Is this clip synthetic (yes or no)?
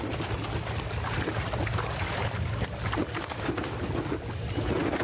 no